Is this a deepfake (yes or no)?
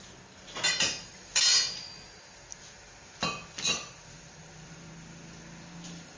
no